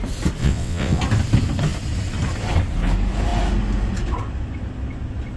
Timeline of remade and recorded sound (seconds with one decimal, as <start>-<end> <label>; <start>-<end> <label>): 0.0-0.4 recorded; 0.4-1.0 remade; 1.0-5.4 recorded